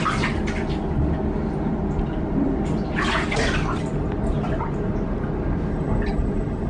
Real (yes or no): yes